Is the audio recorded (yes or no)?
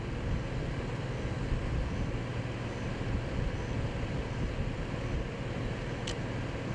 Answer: yes